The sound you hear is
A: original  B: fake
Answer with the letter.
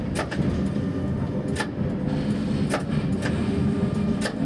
A